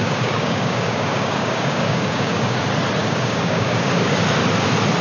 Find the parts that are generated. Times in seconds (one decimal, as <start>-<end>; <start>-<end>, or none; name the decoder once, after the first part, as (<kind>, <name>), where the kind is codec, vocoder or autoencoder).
0.0-2.6 (codec, DAC); 3.0-4.2